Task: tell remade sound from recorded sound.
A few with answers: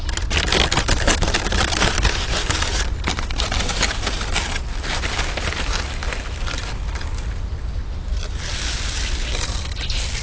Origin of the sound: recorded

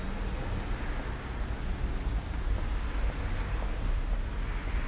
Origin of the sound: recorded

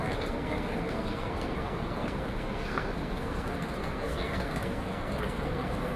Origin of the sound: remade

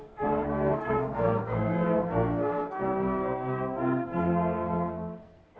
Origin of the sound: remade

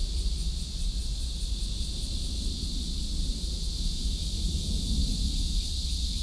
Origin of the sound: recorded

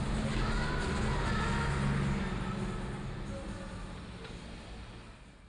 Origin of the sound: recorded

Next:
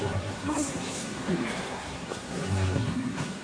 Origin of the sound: remade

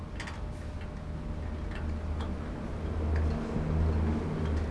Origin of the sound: recorded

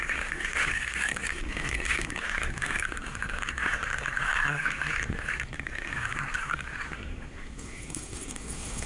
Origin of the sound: remade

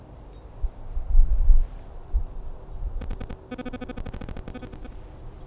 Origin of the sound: recorded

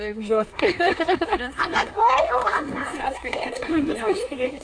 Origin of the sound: remade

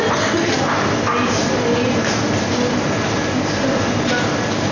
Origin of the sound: recorded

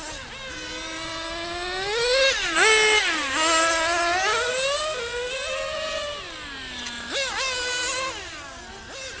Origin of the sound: recorded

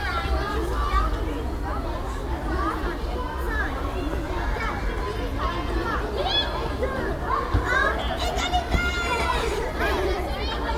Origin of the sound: recorded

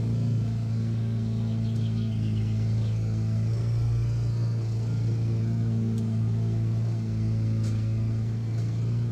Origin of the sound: remade